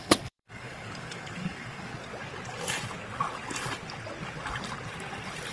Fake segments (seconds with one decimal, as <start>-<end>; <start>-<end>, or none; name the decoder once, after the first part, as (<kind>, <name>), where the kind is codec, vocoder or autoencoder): 0.0-1.9 (codec, DAC)